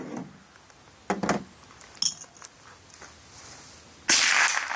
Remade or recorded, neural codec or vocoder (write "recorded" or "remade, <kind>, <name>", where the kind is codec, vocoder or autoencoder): recorded